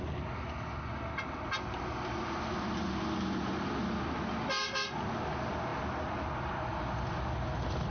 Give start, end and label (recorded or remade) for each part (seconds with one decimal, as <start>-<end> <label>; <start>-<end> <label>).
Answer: 0.0-7.9 recorded